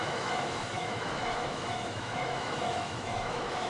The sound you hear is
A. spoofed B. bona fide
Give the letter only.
A